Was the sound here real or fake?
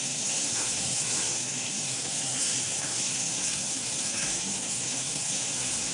fake